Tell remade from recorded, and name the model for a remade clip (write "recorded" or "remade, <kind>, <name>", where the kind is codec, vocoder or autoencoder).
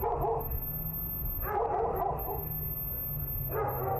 recorded